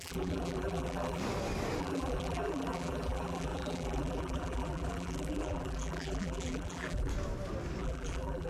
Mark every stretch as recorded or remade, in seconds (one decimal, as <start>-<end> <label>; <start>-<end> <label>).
0.0-1.2 remade; 1.2-1.8 recorded; 1.8-7.1 remade; 7.1-7.8 recorded; 7.8-8.5 remade

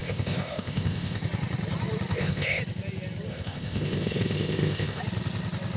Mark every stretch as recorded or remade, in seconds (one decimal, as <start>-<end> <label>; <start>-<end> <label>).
0.0-1.2 remade; 1.2-2.1 recorded; 2.1-2.6 remade; 2.6-3.3 recorded; 3.3-5.0 remade; 5.0-5.8 recorded

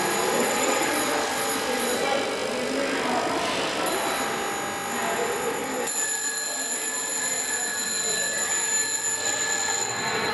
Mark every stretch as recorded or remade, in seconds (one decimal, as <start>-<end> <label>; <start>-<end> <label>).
0.0-0.4 recorded; 0.4-0.9 remade; 0.9-9.2 recorded; 9.2-10.3 remade

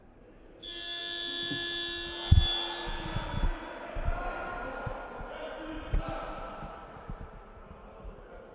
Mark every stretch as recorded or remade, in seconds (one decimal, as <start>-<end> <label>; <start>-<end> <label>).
0.0-8.5 recorded

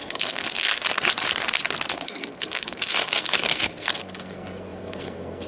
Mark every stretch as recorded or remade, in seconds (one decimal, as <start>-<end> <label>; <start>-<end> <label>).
0.0-0.7 remade; 0.7-1.9 recorded; 1.9-5.5 remade

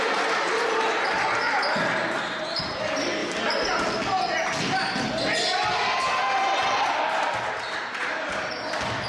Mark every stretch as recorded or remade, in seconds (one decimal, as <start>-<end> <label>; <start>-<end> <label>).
0.0-3.2 recorded; 3.2-3.7 remade; 3.7-9.1 recorded

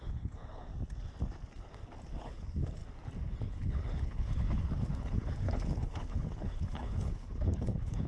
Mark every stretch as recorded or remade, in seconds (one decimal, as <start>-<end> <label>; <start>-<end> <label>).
0.0-0.7 remade; 0.7-2.2 recorded; 2.2-2.8 remade; 2.8-3.4 recorded; 3.4-8.1 remade

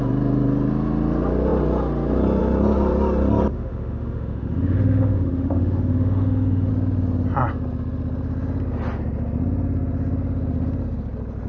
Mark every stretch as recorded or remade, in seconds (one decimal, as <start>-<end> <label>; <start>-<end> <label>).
0.0-3.5 recorded; 3.5-6.7 remade; 6.7-11.5 recorded